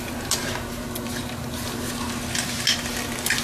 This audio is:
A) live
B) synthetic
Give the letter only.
A